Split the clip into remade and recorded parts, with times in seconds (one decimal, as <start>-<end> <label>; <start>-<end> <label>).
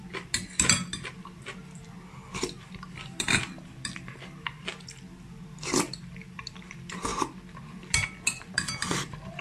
0.0-7.1 remade; 7.1-7.9 recorded; 7.9-9.4 remade